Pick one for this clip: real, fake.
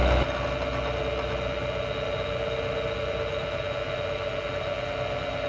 real